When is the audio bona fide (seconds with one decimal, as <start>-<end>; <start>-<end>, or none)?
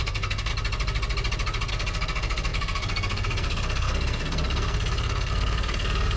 0.5-1.7